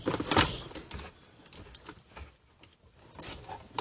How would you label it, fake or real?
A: real